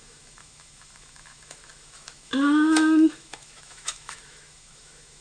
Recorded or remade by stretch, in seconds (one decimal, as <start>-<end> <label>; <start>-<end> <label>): 0.0-5.2 remade